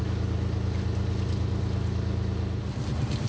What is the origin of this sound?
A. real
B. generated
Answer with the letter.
A